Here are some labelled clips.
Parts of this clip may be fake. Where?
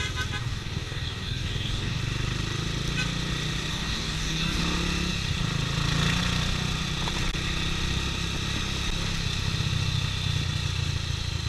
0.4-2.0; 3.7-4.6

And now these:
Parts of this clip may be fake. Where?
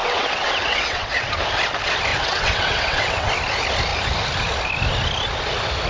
0.0-1.3; 2.1-3.3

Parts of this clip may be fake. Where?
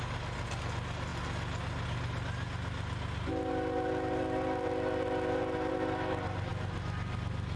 none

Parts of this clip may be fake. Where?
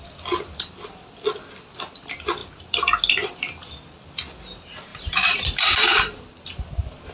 2.4-2.9; 4.9-6.3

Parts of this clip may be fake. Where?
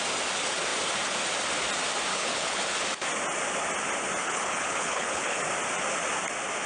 2.1-2.6; 4.2-5.4